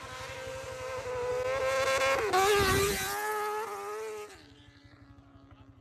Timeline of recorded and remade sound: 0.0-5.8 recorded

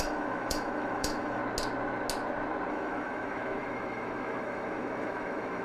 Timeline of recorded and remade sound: 0.0-1.4 remade; 1.4-2.7 recorded; 2.7-5.6 remade

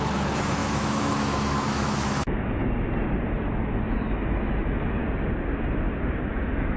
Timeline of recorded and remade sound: 0.0-2.6 remade; 2.6-3.3 recorded; 3.3-5.0 remade; 5.0-6.2 recorded; 6.2-6.8 remade

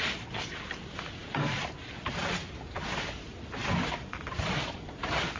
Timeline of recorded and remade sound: 0.0-5.4 recorded